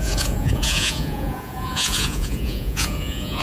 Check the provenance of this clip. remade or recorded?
remade